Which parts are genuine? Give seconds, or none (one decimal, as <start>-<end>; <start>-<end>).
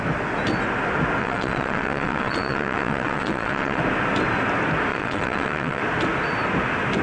0.0-1.2; 3.8-4.9; 5.8-7.0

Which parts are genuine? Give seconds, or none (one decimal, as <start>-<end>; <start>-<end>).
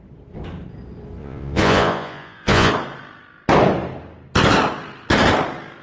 0.0-1.2; 2.7-5.8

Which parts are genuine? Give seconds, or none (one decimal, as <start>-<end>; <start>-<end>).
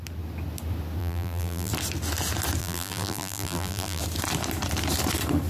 0.0-1.0; 1.7-2.6; 4.0-5.5